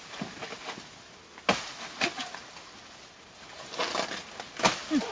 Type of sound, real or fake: real